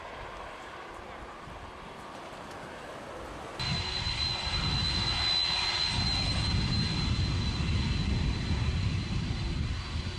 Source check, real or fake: real